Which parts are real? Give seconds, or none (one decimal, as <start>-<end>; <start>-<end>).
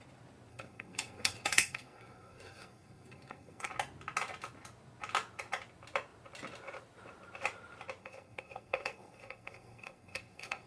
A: 0.0-0.5; 3.7-8.0